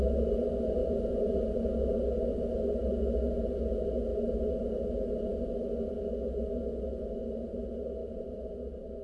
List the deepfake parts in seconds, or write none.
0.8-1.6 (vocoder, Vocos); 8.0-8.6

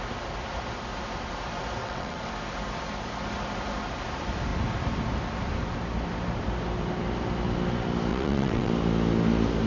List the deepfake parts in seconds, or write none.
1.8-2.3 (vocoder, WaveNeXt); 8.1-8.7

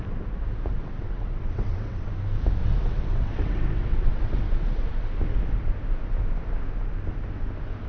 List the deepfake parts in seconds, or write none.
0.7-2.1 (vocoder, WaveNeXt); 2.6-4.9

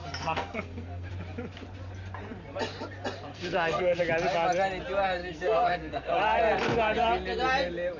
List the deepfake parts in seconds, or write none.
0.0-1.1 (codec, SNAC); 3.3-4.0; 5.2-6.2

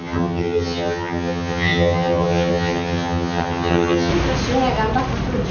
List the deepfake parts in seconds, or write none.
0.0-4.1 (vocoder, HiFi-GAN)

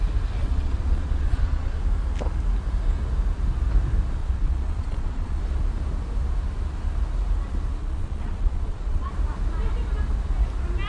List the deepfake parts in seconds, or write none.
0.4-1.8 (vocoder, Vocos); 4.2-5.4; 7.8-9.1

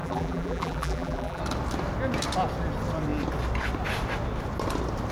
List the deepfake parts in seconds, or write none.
0.0-1.4 (vocoder, BigVGAN v2)

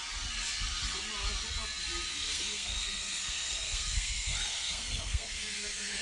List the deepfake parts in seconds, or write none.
2.1-6.0 (codec, SNAC)